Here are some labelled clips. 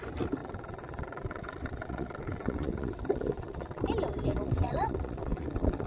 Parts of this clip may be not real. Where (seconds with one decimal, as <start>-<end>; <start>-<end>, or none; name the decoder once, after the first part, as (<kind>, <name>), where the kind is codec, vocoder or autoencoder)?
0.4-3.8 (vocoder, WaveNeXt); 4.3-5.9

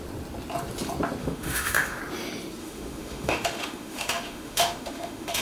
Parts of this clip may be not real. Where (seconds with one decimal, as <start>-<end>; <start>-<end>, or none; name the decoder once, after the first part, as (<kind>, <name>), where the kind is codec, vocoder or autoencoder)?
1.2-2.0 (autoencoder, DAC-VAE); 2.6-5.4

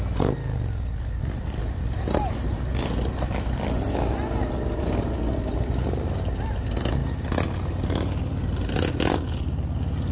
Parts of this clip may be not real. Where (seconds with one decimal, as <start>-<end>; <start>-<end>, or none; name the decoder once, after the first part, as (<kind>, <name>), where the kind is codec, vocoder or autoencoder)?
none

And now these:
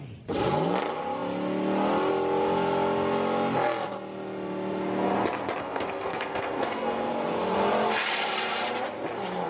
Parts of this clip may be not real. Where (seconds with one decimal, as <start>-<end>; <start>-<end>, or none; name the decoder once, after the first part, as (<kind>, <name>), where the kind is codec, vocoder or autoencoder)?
5.6-7.1 (codec, SNAC)

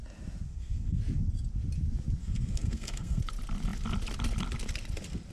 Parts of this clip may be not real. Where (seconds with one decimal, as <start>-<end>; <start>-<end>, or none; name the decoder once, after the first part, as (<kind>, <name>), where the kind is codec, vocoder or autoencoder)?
0.5-1.0 (codec, SNAC); 2.2-3.2

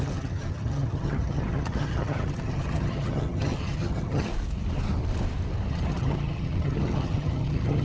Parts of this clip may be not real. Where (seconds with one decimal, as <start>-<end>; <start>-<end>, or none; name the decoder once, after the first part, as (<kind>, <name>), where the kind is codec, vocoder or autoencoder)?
0.0-4.3 (vocoder, HiFi-GAN); 5.7-7.8